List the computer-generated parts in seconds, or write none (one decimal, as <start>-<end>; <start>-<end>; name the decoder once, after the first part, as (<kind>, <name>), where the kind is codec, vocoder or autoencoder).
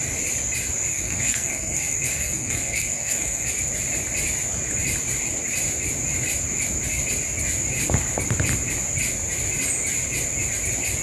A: 0.9-3.5 (codec, SNAC)